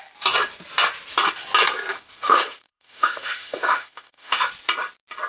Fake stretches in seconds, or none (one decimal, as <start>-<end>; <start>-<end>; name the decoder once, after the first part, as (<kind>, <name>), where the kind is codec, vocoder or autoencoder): 1.9-4.5 (autoencoder, DAC-VAE)